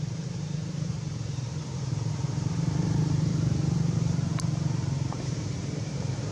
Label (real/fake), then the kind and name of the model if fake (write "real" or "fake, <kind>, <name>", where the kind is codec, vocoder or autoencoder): fake, vocoder, BigVGAN v2